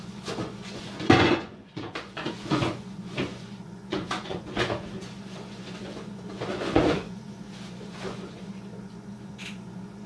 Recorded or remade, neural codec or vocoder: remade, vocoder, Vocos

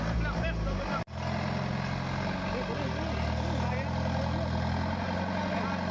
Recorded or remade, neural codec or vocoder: recorded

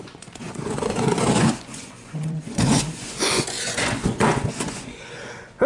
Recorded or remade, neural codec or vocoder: remade, vocoder, Vocos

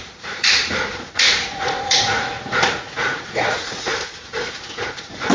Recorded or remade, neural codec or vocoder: remade, vocoder, Vocos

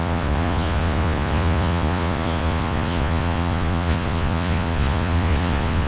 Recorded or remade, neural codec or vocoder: remade, vocoder, Vocos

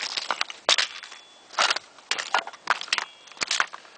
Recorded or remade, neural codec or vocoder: recorded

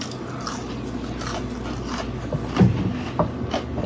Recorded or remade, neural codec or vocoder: recorded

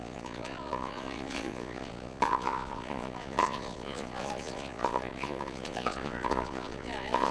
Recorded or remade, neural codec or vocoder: remade, vocoder, Vocos